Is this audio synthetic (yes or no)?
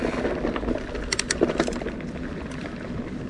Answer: no